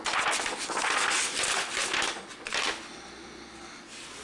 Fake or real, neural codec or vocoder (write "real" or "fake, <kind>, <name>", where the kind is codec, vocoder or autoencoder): real